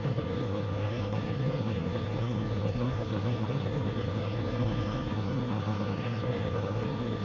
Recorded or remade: remade